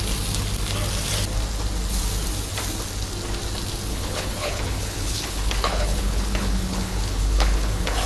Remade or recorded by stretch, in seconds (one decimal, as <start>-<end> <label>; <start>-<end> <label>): 0.0-3.9 recorded; 3.9-8.1 remade